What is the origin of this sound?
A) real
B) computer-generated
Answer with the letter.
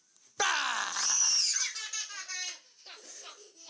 A